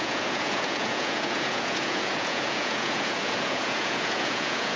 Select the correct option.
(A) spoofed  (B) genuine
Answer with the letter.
A